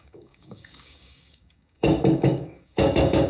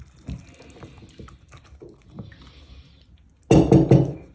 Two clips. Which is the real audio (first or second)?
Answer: second